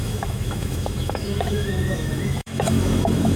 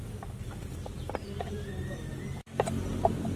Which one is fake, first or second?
first